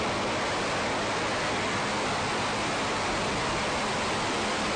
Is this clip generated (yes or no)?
no